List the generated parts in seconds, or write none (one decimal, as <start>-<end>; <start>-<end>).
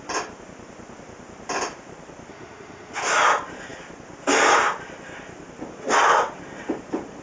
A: 2.3-3.0